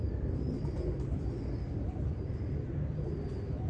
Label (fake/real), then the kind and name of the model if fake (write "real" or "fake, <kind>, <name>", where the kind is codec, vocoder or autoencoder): fake, vocoder, BigVGAN v2